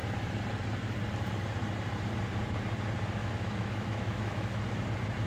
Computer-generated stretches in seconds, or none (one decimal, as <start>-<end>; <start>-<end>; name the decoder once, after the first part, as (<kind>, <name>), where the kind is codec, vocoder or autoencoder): 3.2-4.6 (autoencoder, DAC-VAE)